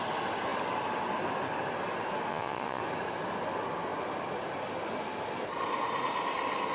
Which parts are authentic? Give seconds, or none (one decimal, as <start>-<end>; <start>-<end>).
0.0-2.3; 2.8-6.7

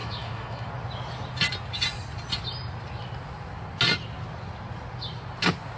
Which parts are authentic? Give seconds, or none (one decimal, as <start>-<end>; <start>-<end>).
0.7-5.8

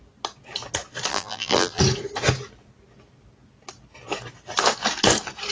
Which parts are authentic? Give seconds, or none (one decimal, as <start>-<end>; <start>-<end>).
0.0-1.1; 1.8-5.5

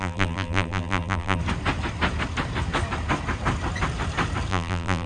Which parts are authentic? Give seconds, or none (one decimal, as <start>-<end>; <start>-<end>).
1.4-4.5